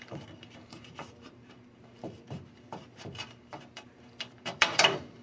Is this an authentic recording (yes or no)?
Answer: no